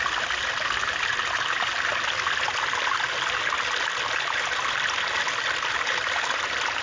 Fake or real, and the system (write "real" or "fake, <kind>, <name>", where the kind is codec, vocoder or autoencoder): real